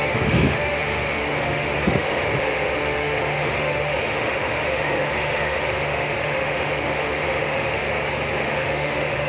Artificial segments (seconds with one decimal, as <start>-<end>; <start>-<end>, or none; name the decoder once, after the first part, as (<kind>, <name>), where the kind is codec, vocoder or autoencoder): 0.0-7.8 (autoencoder, DAC-VAE); 8.4-9.3